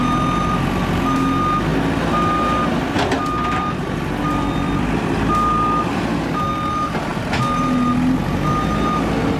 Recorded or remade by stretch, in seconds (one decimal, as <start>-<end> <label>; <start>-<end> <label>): 0.0-9.4 recorded